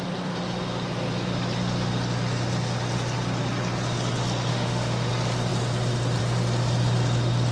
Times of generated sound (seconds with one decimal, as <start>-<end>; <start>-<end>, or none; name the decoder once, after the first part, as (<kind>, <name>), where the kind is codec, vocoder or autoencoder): 4.5-5.1 (autoencoder, DAC-VAE)